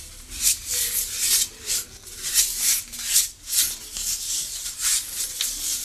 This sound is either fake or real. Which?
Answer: real